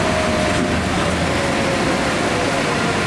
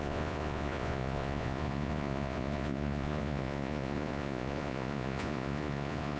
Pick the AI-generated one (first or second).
second